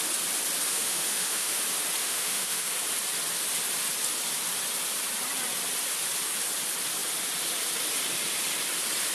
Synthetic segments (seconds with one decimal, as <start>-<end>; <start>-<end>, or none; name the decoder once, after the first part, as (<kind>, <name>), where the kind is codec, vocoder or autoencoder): 0.7-1.6 (autoencoder, DAC-VAE); 2.0-2.7